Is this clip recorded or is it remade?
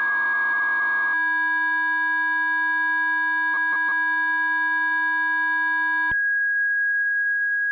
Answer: recorded